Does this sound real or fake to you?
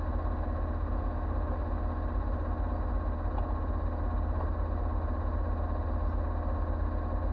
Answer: real